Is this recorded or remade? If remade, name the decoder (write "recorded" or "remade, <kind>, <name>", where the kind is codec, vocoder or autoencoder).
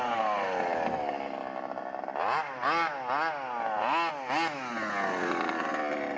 recorded